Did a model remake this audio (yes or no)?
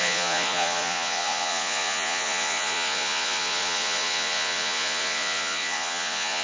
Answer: yes